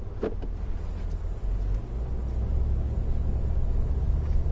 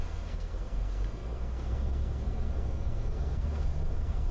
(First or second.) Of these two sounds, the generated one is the second